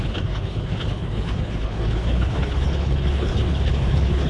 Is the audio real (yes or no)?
no